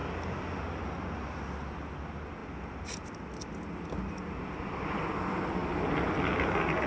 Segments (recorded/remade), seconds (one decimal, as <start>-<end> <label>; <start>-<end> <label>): 0.0-6.9 recorded